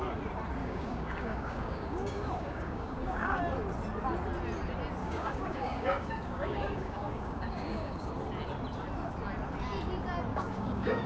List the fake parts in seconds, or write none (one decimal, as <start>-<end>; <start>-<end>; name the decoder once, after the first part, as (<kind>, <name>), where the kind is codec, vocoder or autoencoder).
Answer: 0.6-3.4 (codec, DAC); 5.0-8.1; 10.3-11.1